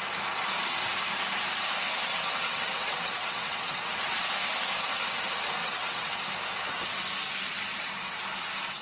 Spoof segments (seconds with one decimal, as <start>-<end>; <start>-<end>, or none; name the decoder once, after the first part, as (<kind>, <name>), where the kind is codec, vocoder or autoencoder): 2.1-4.3 (vocoder, WaveNeXt); 5.6-6.2